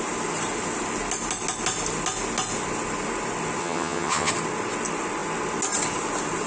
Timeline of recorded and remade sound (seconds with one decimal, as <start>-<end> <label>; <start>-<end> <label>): 0.0-3.6 recorded; 3.6-4.3 remade; 4.3-6.5 recorded